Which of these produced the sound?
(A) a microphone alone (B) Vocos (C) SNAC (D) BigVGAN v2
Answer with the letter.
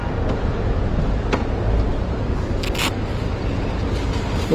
A